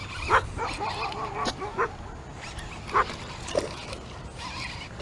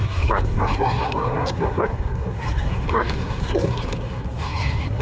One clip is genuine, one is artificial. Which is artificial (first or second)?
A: second